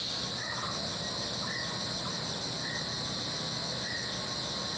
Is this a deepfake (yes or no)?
no